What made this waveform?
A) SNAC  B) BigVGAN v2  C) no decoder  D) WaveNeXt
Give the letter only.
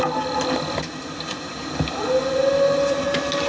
C